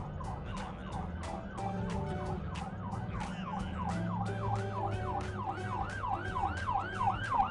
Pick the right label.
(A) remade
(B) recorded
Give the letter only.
B